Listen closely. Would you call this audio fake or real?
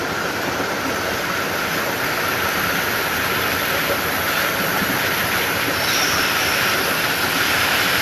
fake